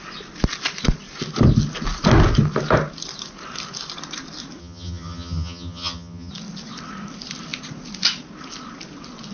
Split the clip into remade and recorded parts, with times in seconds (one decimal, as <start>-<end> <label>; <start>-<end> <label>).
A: 0.0-4.6 recorded; 4.6-6.3 remade; 6.3-9.3 recorded